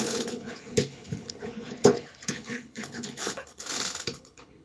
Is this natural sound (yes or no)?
no